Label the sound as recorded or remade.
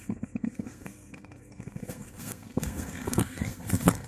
remade